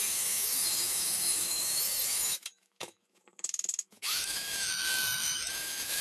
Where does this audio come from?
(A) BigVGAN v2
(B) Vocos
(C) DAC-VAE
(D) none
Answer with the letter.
C